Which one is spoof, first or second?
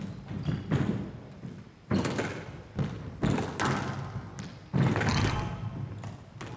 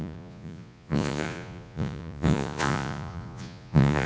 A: second